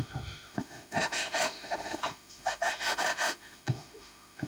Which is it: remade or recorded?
remade